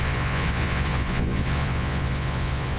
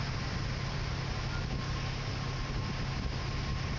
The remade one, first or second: first